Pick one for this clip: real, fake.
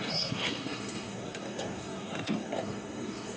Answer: fake